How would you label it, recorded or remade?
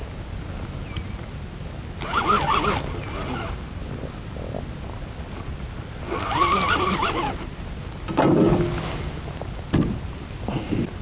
recorded